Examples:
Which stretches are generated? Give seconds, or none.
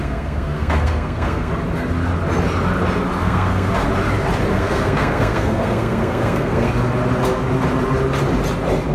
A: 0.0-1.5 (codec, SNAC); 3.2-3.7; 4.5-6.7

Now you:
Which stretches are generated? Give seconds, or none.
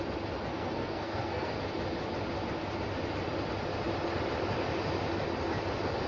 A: 0.5-1.5 (codec, SNAC)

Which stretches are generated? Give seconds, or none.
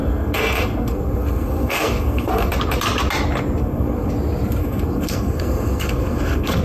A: 0.0-2.5 (codec, SNAC); 3.6-4.1; 4.6-6.6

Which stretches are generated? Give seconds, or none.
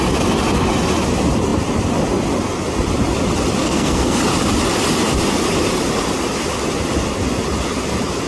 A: 3.6-4.2 (codec, SNAC)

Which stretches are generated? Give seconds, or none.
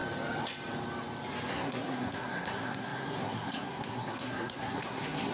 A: 1.5-5.3 (codec, SNAC)